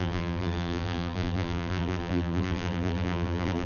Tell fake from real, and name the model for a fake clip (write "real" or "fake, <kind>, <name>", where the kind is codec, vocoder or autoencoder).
fake, vocoder, BigVGAN v2